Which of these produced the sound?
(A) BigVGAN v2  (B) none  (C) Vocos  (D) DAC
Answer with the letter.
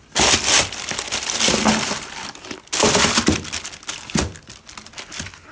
B